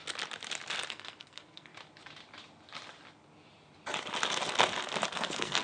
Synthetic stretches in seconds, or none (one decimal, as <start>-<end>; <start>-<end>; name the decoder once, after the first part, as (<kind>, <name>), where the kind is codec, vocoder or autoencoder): 0.9-1.7 (codec, SNAC); 5.1-5.6